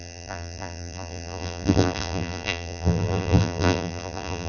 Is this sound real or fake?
fake